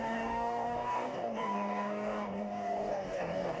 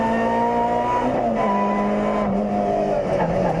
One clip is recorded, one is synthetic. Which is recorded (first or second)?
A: second